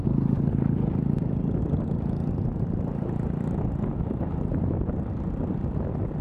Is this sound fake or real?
real